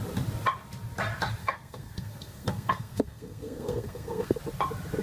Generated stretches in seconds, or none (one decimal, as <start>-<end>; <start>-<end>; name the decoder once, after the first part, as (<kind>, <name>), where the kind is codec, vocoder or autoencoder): 1.4-4.4 (codec, SNAC)